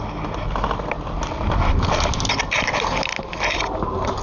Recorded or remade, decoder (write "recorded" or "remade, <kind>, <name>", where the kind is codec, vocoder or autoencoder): recorded